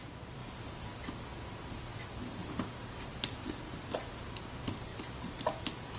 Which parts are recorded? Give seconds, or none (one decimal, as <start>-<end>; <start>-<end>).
0.0-6.0